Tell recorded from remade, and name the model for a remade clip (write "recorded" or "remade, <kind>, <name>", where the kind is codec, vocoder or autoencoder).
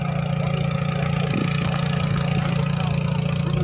recorded